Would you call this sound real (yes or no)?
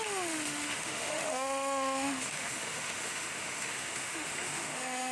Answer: no